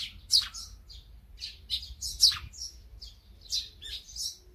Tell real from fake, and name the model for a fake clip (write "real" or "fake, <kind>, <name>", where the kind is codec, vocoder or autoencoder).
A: real